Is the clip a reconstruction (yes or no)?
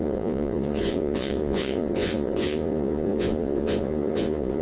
yes